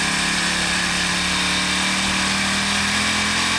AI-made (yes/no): no